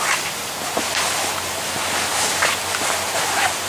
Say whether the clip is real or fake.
real